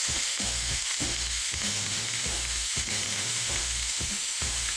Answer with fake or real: fake